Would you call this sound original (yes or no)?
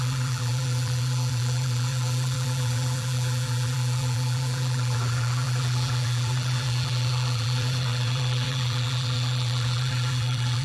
no